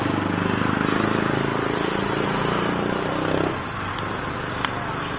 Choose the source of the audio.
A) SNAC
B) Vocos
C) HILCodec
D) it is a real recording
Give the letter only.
D